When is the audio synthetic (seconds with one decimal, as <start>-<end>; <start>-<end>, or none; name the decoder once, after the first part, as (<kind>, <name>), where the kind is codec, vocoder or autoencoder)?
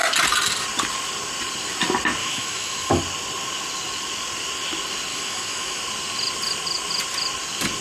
2.2-3.0 (autoencoder, DAC-VAE); 5.1-5.8